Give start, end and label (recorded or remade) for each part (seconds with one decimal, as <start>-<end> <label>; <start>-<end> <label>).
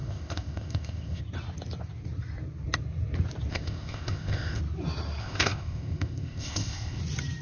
0.0-1.2 remade; 1.2-3.5 recorded; 3.5-4.6 remade; 4.6-5.2 recorded; 5.2-7.0 remade; 7.0-7.4 recorded